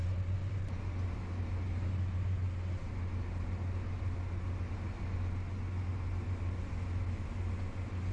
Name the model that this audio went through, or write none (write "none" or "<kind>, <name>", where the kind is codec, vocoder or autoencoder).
none